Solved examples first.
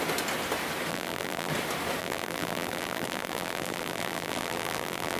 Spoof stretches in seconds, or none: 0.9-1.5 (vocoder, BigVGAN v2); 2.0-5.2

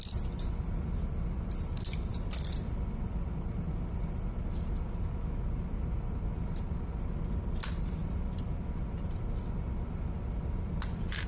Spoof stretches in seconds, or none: none

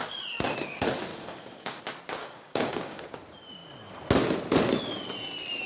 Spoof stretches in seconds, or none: 1.1-1.8 (codec, DAC); 2.2-3.1

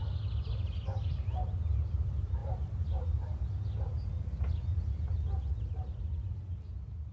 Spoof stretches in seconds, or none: none

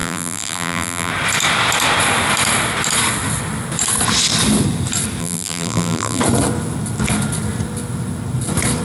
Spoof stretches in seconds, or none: 0.0-1.1 (vocoder, BigVGAN v2); 5.2-6.2

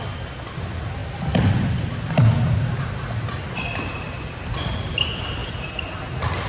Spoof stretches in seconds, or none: none